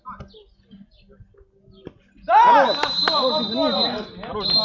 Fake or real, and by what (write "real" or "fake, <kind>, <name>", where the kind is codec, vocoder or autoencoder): real